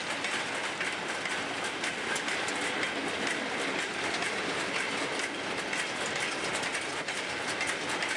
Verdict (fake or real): real